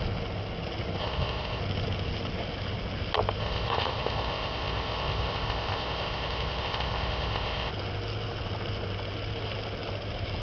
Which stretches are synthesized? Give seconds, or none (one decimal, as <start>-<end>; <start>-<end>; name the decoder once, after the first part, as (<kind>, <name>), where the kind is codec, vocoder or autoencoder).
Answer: 1.0-1.6 (codec, ZipCodec); 3.4-7.7